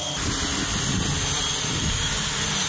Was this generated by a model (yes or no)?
no